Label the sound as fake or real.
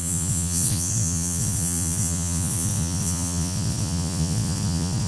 fake